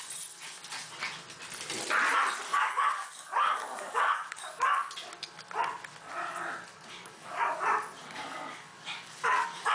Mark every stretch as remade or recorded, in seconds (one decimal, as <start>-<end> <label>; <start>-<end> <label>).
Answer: 0.0-2.5 recorded; 2.5-4.9 remade; 4.9-6.7 recorded; 6.7-7.6 remade; 7.6-8.0 recorded; 8.0-9.7 remade